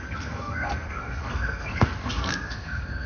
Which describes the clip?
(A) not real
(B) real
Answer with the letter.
A